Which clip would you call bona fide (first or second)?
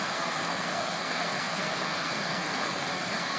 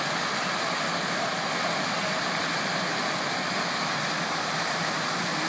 second